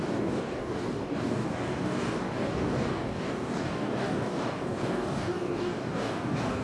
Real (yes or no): no